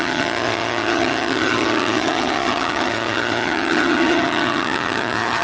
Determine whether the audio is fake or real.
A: fake